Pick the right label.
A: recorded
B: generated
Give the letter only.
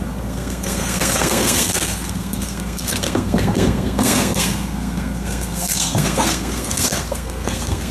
B